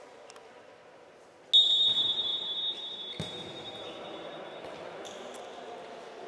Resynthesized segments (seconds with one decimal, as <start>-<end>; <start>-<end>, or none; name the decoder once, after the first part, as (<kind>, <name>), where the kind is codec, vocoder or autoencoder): none